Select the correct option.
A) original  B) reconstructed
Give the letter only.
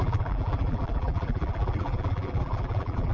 B